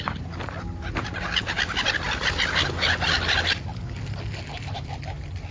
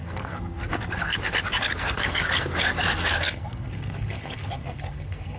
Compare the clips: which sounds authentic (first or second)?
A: first